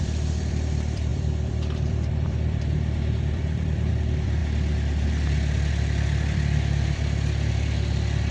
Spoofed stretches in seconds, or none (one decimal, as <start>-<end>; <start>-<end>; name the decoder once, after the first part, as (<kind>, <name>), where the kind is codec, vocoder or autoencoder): 0.0-4.4 (vocoder, BigVGAN v2); 5.7-8.3